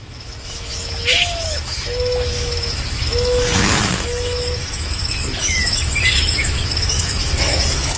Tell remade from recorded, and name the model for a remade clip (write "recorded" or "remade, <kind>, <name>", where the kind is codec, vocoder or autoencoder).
remade, autoencoder, DAC-VAE